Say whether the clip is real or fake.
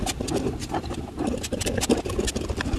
real